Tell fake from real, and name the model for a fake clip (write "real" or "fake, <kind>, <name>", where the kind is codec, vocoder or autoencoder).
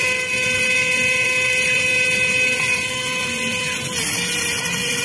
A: real